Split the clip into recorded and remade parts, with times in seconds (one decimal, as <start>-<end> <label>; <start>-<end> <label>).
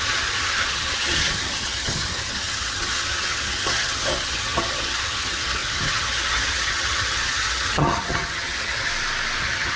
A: 0.0-8.9 remade; 8.9-9.4 recorded; 9.4-9.8 remade